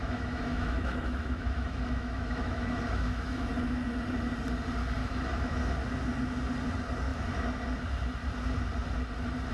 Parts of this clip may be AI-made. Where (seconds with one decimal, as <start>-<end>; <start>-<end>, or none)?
0.0-3.5; 5.0-5.6